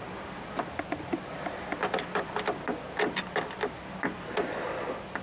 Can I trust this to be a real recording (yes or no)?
yes